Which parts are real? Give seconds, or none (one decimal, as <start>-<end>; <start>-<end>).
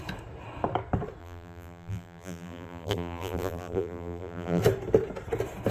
0.0-1.2; 4.6-5.7